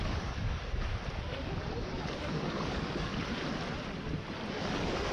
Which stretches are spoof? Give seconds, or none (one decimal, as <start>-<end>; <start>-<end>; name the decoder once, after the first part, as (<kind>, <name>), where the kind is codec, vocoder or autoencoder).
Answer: 0.0-0.9 (codec, DAC); 1.8-3.1; 4.5-5.1